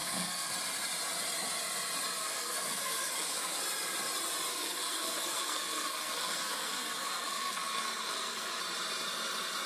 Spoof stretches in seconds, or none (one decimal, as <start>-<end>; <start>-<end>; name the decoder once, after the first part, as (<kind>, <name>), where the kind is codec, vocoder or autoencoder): 0.0-0.5 (codec, SNAC); 2.2-3.6; 4.5-8.6